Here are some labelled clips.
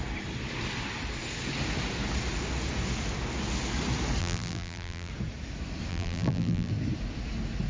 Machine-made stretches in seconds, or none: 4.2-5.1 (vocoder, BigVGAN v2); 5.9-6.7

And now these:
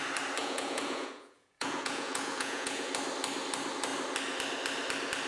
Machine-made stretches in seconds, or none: 0.4-2.9 (vocoder, Vocos)